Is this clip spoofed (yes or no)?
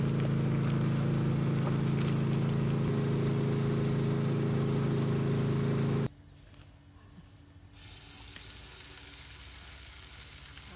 no